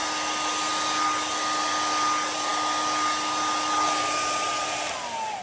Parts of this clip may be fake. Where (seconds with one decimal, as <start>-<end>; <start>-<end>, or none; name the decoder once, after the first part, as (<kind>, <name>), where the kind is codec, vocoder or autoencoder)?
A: none